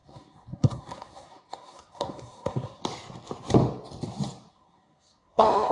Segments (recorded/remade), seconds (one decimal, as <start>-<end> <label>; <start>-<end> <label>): 0.0-2.8 remade; 2.8-4.5 recorded; 4.5-5.7 remade